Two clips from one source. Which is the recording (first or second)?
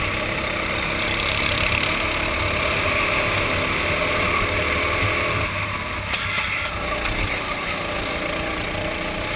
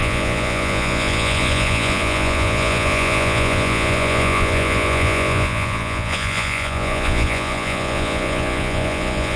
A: first